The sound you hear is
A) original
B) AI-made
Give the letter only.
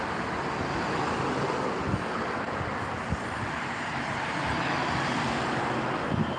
A